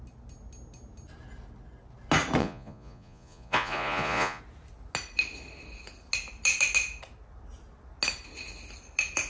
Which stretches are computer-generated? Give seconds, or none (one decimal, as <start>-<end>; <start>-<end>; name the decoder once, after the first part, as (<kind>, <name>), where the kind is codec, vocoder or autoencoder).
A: 2.4-4.4 (vocoder, Vocos)